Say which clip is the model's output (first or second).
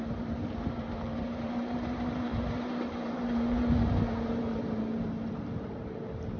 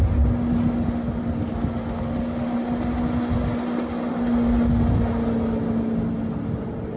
first